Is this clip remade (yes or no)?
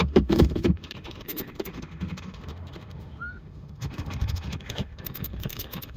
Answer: yes